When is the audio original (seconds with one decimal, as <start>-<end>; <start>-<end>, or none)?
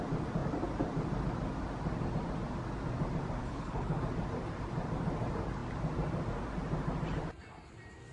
0.0-3.4; 4.0-8.1